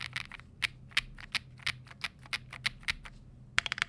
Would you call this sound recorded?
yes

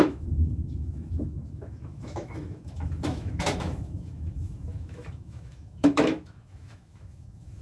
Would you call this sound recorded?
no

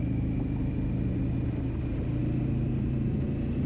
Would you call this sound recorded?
yes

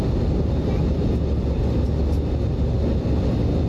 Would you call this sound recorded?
yes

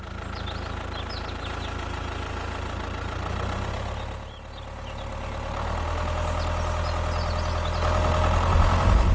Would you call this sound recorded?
yes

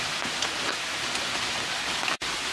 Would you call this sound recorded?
yes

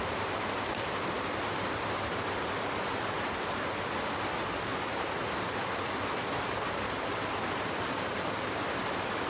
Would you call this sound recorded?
yes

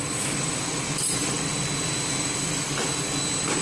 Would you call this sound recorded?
yes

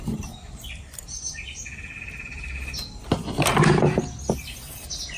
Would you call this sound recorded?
yes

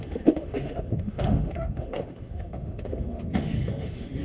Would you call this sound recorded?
no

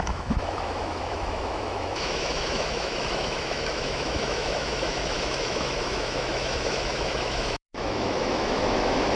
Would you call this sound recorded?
no